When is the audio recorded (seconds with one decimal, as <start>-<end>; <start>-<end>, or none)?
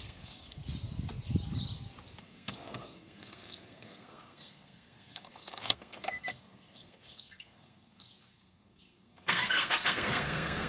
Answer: 0.6-2.2